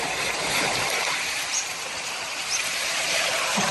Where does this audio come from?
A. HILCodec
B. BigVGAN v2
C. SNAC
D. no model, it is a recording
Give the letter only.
B